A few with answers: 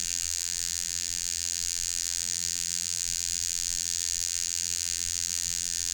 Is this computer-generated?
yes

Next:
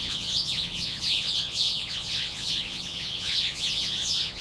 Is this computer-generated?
yes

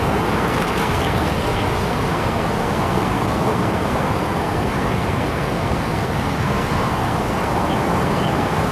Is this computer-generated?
yes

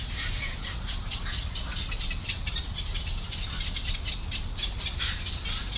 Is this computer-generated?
no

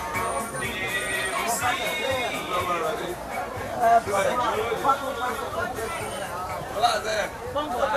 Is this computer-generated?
yes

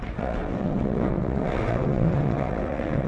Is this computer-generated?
yes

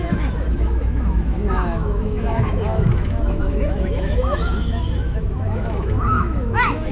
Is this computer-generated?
yes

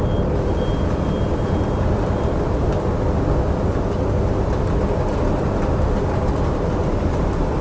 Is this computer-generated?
no